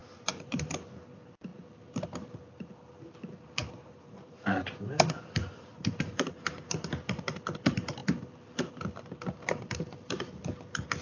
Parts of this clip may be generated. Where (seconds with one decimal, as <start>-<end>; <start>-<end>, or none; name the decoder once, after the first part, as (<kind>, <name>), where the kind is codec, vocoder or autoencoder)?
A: 0.0-0.9 (vocoder, BigVGAN v2); 3.6-6.9